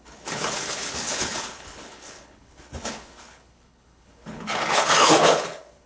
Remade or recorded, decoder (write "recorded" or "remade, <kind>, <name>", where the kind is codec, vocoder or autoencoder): remade, codec, HILCodec